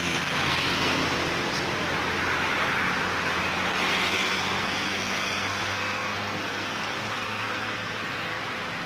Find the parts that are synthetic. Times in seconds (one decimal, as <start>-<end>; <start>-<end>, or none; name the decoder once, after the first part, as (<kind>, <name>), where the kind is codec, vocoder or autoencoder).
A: 0.0-1.0 (codec, SNAC); 3.7-8.4